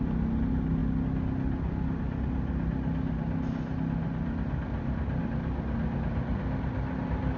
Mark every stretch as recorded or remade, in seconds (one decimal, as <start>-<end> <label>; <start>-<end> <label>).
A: 0.0-7.4 recorded